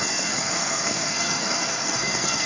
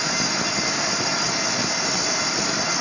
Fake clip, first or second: first